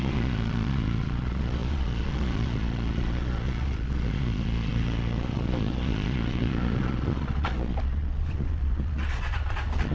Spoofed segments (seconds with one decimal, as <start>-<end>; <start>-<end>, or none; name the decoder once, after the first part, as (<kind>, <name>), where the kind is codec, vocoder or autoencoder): 0.0-9.9 (vocoder, Vocos)